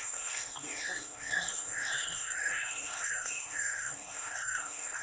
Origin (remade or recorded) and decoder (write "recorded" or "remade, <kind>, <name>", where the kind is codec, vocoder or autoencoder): remade, codec, SNAC